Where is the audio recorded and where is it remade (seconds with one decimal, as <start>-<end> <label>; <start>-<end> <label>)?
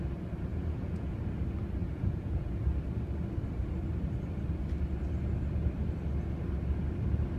0.0-0.5 recorded; 0.5-1.1 remade; 1.1-1.8 recorded; 1.8-2.6 remade; 2.6-7.4 recorded